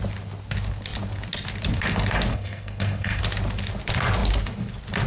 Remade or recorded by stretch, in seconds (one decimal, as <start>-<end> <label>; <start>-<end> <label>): 0.0-2.3 recorded; 2.3-3.2 remade; 3.2-5.1 recorded

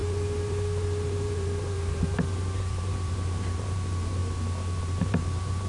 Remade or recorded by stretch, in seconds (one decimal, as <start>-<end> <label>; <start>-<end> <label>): 0.0-4.2 remade; 4.2-4.8 recorded; 4.8-5.7 remade

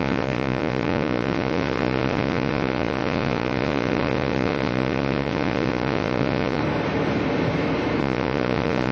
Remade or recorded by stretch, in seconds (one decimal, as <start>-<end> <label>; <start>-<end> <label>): 0.0-6.6 remade; 6.6-8.0 recorded; 8.0-8.9 remade

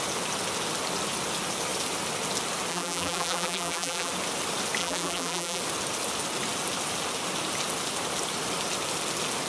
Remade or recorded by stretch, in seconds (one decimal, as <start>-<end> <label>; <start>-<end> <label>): 0.0-2.7 recorded; 2.7-4.1 remade; 4.1-4.8 recorded; 4.8-5.6 remade; 5.6-9.5 recorded